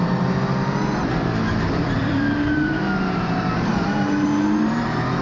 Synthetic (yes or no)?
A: yes